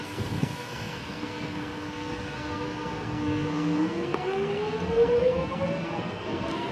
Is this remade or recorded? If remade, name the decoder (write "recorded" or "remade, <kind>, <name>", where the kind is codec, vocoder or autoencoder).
remade, codec, SNAC